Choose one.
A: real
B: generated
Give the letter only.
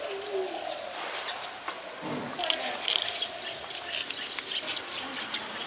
A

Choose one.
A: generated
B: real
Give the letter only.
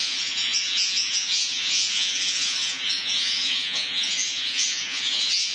A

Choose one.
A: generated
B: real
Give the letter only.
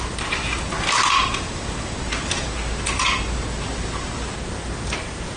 B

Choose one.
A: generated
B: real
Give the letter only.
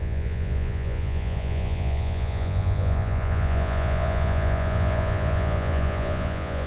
A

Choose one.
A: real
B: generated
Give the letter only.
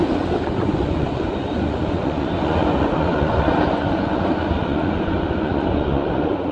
B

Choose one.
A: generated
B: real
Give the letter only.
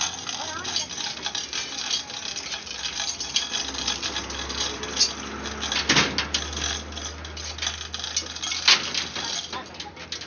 B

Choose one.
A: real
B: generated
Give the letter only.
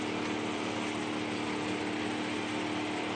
A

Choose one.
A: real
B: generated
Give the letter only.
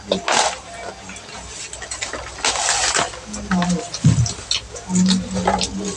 A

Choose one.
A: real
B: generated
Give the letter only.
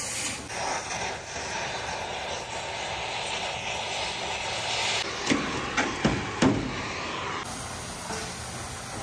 A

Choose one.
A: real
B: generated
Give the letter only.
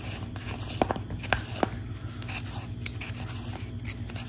A